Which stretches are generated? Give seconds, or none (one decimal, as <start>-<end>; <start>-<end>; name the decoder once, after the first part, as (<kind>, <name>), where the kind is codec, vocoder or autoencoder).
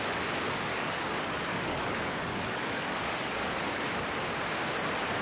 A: 0.7-3.8 (codec, DAC)